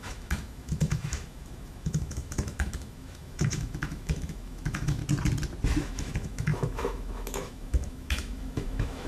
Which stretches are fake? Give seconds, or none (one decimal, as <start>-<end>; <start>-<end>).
0.0-5.0; 5.8-9.1